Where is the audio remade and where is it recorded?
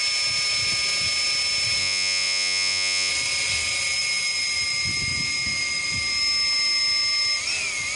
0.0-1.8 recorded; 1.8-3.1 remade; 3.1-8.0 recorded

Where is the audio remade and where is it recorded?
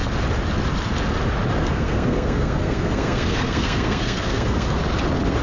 0.0-1.6 recorded; 1.6-4.8 remade; 4.8-5.4 recorded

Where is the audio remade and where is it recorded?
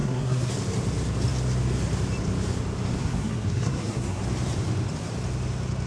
0.0-0.5 remade; 0.5-3.0 recorded; 3.0-4.2 remade; 4.2-5.9 recorded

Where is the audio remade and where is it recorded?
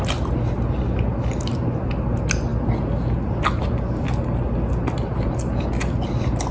0.0-6.5 recorded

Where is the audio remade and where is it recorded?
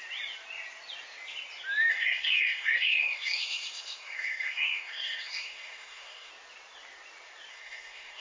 0.0-1.9 recorded; 1.9-6.3 remade; 6.3-7.5 recorded; 7.5-8.2 remade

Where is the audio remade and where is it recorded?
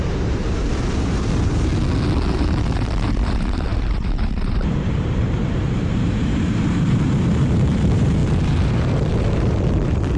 0.0-1.7 remade; 1.7-2.3 recorded; 2.3-10.2 remade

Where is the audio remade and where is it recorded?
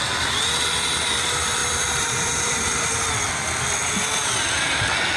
0.0-1.6 recorded; 1.6-2.9 remade; 2.9-5.2 recorded